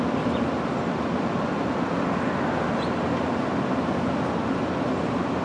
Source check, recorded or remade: recorded